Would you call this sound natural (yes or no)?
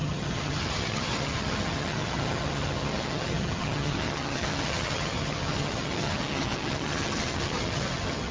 no